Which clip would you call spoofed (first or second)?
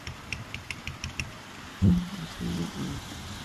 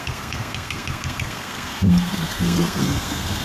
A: second